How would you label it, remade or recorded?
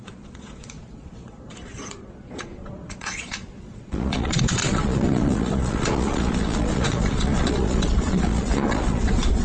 remade